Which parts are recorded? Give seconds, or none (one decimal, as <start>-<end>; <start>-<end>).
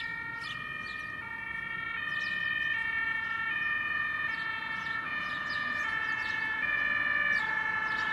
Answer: 0.0-2.8; 6.8-8.1